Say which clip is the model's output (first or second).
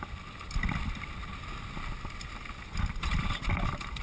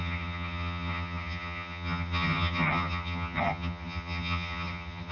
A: second